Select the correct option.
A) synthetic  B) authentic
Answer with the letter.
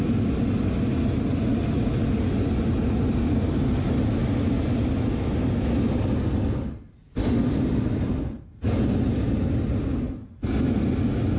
B